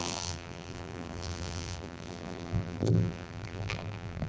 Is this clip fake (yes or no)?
yes